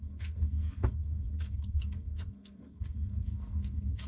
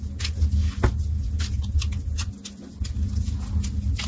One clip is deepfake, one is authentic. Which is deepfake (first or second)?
first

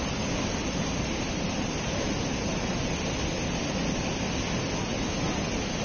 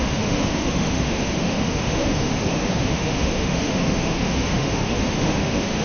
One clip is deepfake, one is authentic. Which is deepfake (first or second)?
second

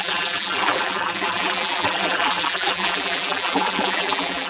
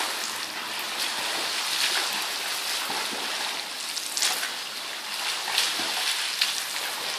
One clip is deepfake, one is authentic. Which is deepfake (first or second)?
first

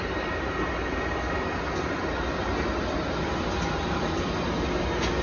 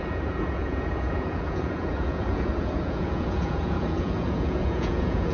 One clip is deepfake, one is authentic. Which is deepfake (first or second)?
second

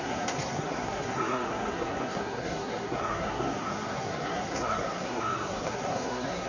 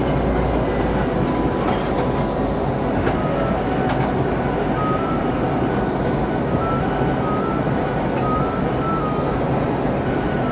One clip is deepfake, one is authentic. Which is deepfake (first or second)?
first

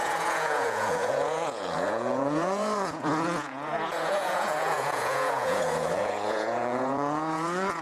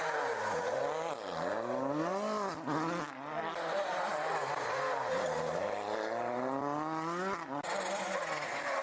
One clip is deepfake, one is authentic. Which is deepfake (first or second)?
first